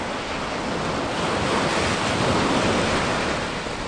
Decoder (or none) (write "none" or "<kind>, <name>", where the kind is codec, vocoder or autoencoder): none